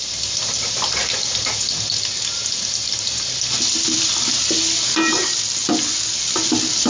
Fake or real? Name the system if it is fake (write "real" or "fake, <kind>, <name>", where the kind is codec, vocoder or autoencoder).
real